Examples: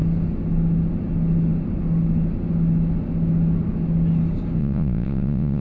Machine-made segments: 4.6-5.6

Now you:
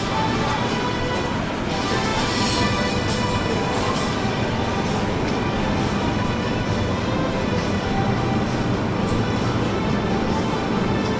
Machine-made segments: none

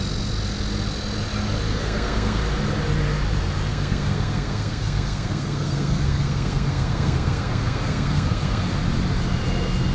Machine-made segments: 1.7-2.4; 3.7-8.8

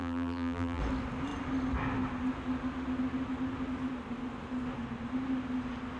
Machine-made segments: 0.0-0.8

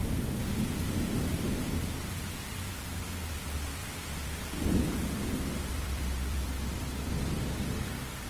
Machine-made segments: 0.0-2.1; 3.8-7.5

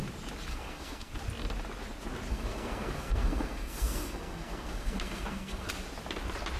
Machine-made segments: 0.5-1.1; 2.3-5.7

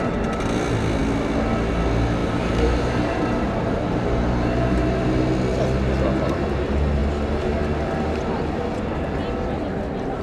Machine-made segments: 2.2-4.8

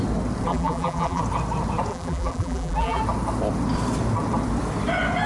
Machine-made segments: 0.5-1.2; 1.9-3.0